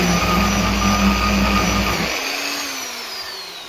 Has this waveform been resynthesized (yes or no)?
no